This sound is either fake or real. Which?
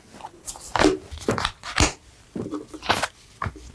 real